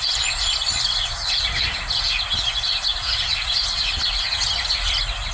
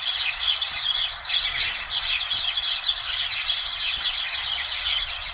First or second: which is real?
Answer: first